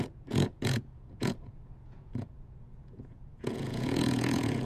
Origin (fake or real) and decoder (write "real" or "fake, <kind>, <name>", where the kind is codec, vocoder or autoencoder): fake, vocoder, Vocos